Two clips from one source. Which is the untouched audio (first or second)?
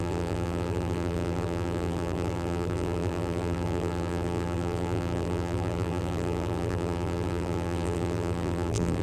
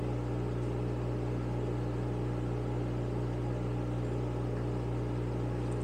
second